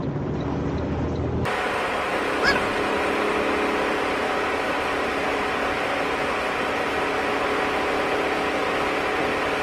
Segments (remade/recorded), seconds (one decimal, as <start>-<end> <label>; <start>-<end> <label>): 0.0-9.6 recorded